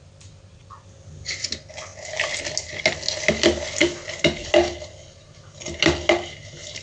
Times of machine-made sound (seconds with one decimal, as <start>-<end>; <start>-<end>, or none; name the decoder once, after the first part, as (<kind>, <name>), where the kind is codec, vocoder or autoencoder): none